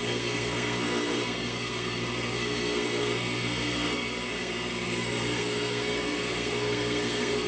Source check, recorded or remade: remade